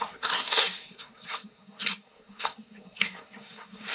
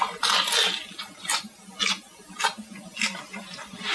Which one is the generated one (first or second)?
first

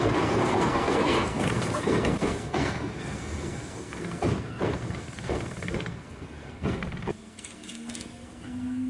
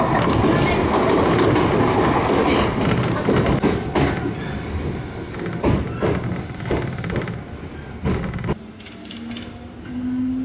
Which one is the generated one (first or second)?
first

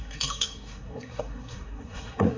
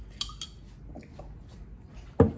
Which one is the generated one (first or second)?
first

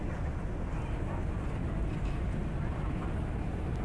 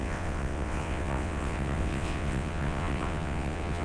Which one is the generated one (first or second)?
second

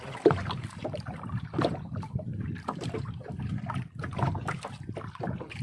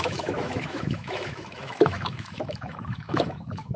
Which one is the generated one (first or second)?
second